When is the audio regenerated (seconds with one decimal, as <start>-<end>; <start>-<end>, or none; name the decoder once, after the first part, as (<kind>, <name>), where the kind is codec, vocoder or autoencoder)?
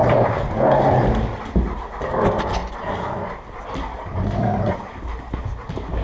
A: 0.0-0.6 (vocoder, BigVGAN v2)